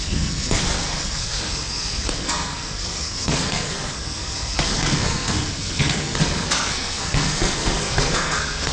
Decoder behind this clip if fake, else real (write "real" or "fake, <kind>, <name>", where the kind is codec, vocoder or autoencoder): fake, codec, SNAC